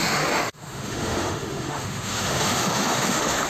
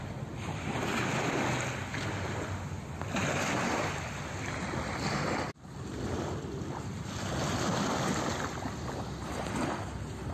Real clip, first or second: second